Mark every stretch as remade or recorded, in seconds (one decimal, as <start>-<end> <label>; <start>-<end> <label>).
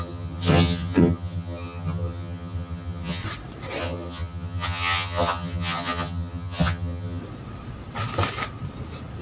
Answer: 0.0-3.2 remade; 3.2-3.8 recorded; 3.8-7.2 remade; 7.2-9.2 recorded